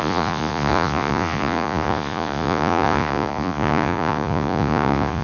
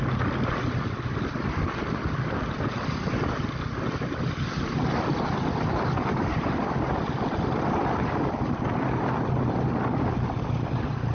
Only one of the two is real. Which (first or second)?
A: second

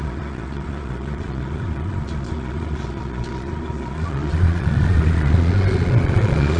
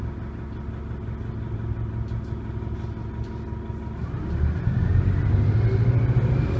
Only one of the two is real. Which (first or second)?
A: second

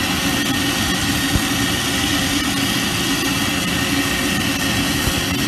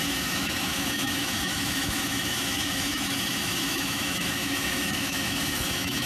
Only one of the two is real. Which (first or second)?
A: first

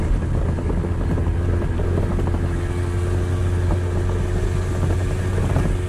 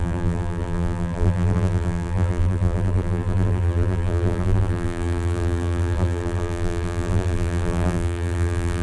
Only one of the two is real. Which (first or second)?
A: first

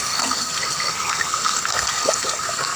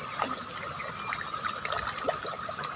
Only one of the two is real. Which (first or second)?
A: second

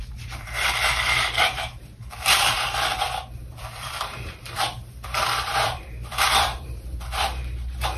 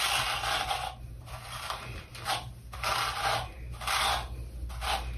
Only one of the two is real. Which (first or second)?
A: second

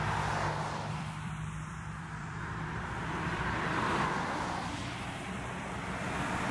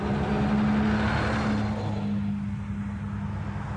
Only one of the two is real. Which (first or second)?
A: second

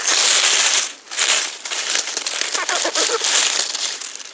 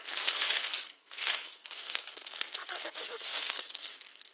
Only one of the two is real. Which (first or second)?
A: first